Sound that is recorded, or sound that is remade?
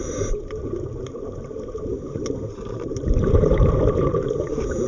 remade